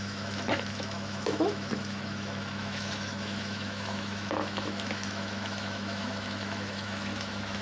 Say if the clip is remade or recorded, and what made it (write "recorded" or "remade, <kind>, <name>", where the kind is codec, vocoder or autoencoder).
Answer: remade, autoencoder, DAC-VAE